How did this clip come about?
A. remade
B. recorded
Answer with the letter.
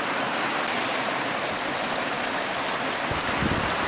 B